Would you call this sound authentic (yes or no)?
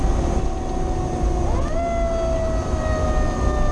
yes